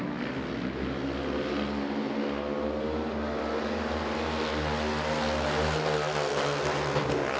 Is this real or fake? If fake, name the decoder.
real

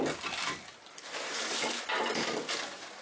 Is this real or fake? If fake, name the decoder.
real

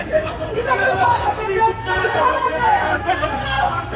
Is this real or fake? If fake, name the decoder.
fake, codec, SNAC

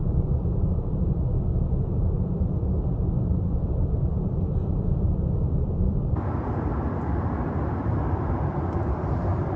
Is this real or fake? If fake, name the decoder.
fake, vocoder, BigVGAN v2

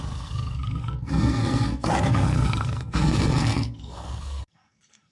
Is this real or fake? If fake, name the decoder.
fake, codec, SNAC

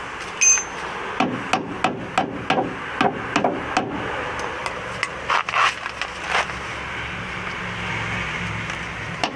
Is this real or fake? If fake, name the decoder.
real